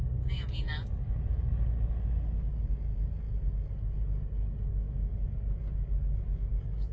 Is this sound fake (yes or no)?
no